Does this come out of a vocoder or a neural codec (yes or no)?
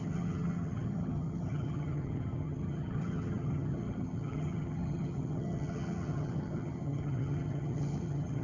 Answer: yes